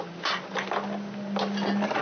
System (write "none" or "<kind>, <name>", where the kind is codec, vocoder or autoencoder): none